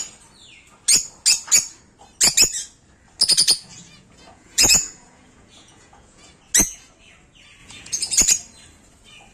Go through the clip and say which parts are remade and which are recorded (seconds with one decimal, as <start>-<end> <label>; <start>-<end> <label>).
0.0-3.7 recorded; 3.7-6.4 remade; 6.4-7.6 recorded; 7.6-8.2 remade; 8.2-9.3 recorded